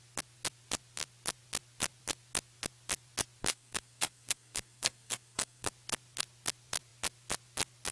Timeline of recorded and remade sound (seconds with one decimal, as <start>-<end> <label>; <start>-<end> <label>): 0.0-3.4 recorded; 3.4-5.7 remade; 5.7-7.9 recorded